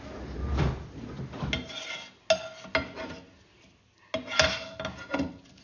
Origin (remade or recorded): recorded